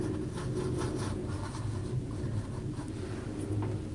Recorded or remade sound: recorded